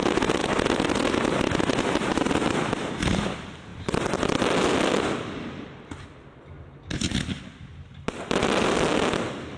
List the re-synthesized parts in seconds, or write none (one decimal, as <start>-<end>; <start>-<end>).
none